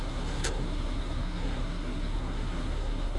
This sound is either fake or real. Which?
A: fake